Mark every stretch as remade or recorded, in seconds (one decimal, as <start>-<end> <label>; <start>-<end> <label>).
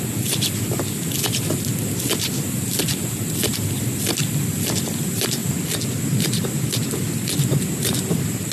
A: 0.0-8.5 recorded